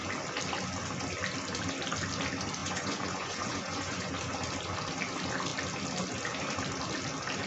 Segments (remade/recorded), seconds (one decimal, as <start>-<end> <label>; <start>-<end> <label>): 0.0-2.6 recorded; 2.6-4.1 remade; 4.1-7.5 recorded